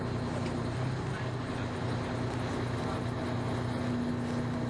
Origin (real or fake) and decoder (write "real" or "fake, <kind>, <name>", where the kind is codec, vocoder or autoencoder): real